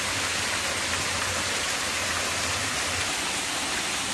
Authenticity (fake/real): real